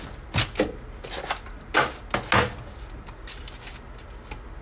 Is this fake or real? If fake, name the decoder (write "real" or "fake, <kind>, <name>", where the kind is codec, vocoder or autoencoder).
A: real